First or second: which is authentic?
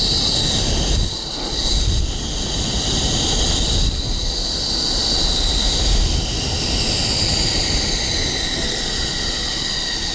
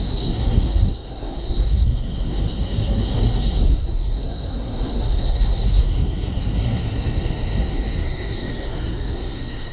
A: first